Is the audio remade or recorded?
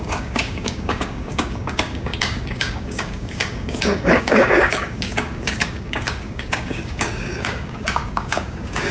remade